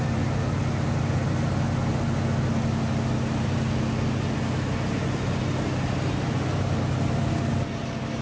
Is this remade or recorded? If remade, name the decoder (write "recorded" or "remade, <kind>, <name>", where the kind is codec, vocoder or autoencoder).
recorded